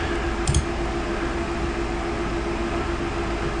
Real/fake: real